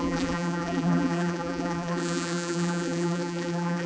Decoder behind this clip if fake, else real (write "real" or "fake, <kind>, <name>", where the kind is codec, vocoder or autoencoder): fake, vocoder, BigVGAN v2